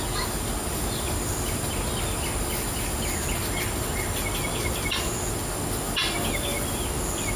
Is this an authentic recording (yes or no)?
yes